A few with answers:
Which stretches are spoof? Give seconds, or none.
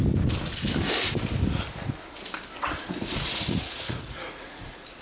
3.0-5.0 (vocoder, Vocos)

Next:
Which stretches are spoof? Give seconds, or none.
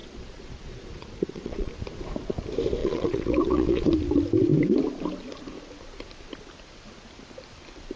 0.0-1.7 (vocoder, Vocos); 2.8-3.9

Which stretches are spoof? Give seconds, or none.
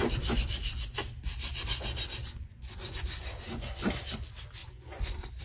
2.2-3.9 (vocoder, Vocos); 4.6-5.4